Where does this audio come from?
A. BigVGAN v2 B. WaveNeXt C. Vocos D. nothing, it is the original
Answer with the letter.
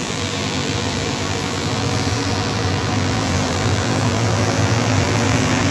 A